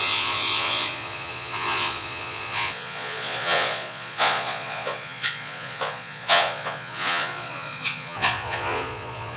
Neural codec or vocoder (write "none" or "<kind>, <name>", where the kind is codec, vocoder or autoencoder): vocoder, Vocos